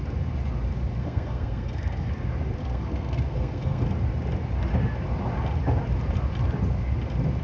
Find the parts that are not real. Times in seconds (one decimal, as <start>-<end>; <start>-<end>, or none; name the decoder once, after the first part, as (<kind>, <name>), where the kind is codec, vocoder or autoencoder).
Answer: 1.0-2.1 (codec, SNAC); 2.6-3.8